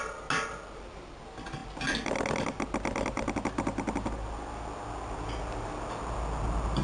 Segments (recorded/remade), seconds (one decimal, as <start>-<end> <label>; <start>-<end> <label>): 0.0-6.8 recorded